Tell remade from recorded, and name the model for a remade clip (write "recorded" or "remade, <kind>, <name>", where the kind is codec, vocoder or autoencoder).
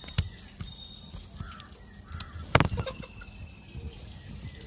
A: recorded